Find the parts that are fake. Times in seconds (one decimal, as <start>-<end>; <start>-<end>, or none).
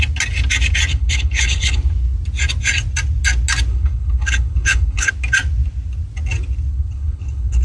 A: 0.9-1.8; 3.7-5.1; 6.7-7.6